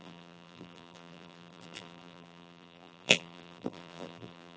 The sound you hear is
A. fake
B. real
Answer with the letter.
A